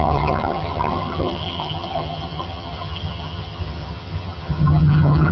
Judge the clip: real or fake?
fake